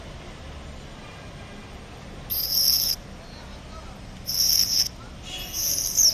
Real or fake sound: real